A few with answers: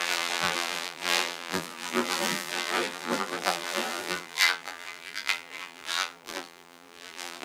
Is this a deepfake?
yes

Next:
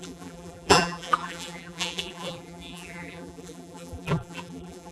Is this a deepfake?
yes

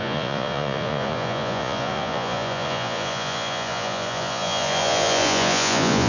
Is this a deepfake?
yes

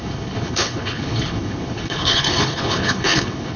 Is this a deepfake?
yes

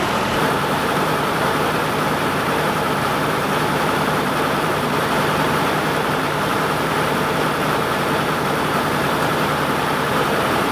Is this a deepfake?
yes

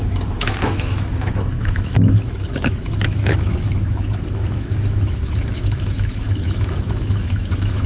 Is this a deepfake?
yes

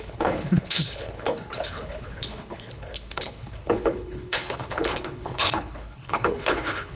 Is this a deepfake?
yes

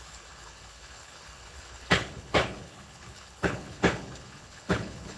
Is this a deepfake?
yes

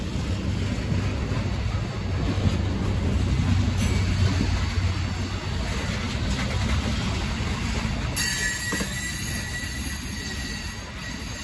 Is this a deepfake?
no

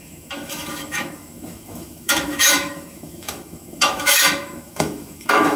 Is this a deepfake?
yes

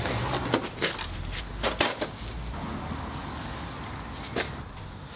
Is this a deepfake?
no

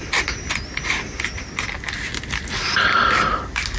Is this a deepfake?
no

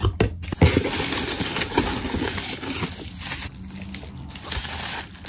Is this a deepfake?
no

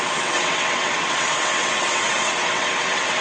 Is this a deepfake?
yes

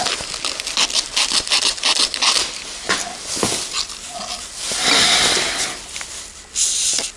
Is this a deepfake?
no